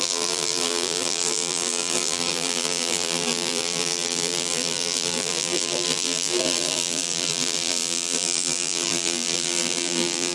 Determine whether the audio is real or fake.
fake